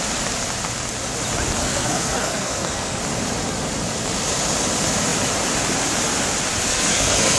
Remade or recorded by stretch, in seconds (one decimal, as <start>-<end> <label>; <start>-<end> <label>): 0.0-1.6 recorded; 1.6-3.0 remade; 3.0-6.7 recorded; 6.7-7.4 remade